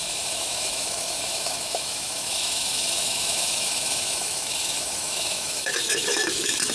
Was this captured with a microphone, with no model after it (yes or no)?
no